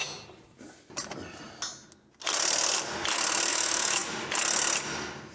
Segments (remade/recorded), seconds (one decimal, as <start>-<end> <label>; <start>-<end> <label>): 0.0-3.5 recorded; 3.5-4.1 remade; 4.1-5.3 recorded